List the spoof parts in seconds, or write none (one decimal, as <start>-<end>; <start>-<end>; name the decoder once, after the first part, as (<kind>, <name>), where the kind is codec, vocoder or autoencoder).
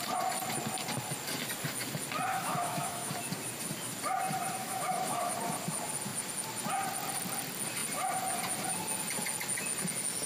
2.3-3.1 (autoencoder, DAC-VAE); 4.6-5.3